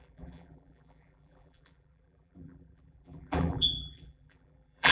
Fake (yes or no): yes